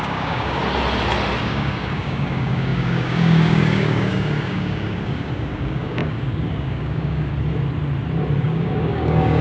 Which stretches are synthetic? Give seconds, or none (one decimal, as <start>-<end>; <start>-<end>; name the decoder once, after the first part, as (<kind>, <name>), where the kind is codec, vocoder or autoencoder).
0.0-0.6 (codec, DAC); 1.4-7.3; 8.4-9.4

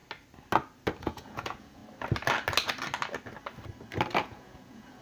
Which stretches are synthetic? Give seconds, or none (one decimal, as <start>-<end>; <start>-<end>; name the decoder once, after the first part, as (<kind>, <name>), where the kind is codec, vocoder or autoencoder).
1.0-1.8 (vocoder, Vocos); 4.2-5.0